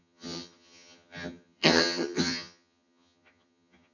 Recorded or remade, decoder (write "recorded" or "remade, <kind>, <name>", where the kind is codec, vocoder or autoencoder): remade, vocoder, HiFi-GAN